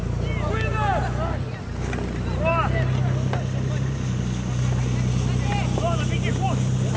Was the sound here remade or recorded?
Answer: recorded